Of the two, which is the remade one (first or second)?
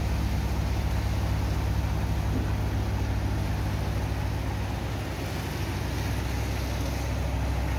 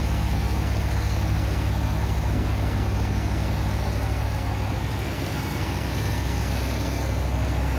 second